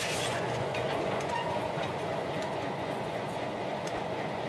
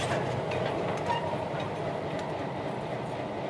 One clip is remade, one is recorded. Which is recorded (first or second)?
second